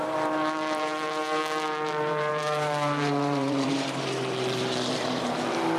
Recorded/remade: remade